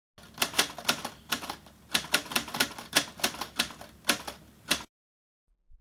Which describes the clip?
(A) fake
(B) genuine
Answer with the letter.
B